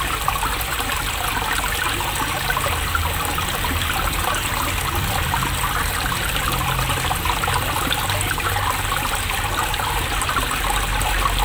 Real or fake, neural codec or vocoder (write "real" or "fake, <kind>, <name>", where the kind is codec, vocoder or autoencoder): real